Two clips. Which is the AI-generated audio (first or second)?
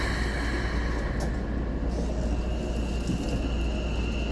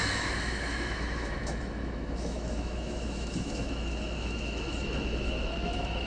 second